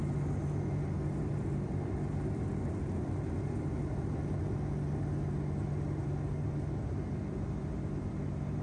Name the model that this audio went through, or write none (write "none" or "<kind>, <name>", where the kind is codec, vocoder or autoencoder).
none